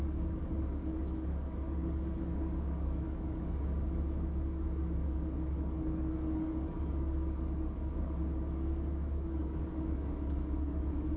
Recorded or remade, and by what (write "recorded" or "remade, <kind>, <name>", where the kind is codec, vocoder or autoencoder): remade, codec, DAC